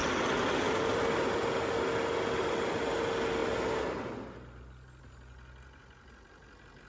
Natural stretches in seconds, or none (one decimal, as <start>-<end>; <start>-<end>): 0.0-6.9